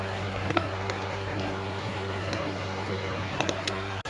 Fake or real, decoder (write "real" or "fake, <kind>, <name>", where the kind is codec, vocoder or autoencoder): fake, codec, SNAC